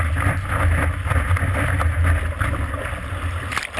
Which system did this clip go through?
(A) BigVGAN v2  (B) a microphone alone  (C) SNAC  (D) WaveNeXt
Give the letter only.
B